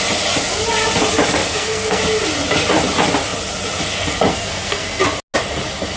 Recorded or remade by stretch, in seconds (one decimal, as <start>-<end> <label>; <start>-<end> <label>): 0.0-1.4 recorded; 1.4-2.0 remade; 2.0-4.3 recorded; 4.3-5.0 remade; 5.0-6.0 recorded